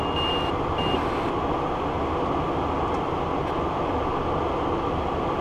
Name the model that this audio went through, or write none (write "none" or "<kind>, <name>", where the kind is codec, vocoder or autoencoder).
none